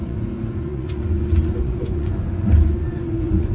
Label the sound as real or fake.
fake